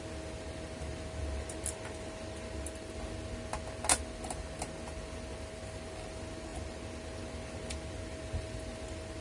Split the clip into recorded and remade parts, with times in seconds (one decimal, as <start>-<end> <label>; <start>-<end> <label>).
0.0-9.2 recorded